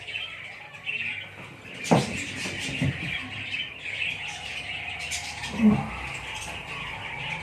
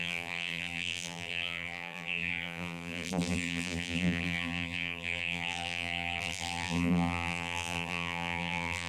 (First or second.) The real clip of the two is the first